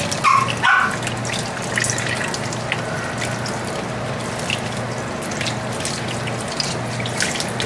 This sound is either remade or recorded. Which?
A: recorded